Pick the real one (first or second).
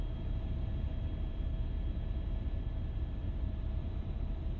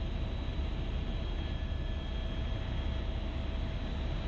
second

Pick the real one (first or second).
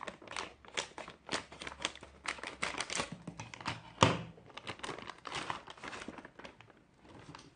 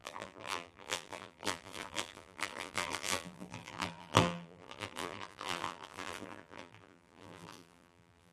first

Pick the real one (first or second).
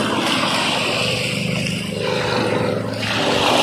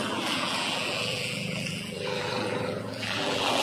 first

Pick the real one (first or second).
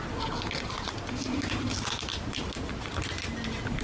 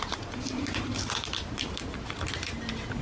first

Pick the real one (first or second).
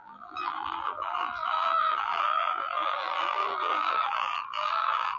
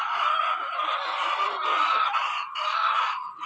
second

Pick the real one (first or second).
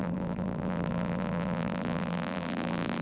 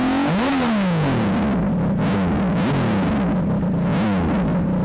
second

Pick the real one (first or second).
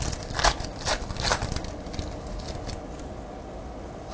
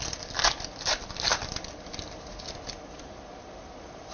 first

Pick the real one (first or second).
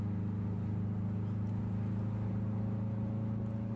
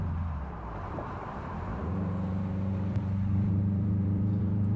first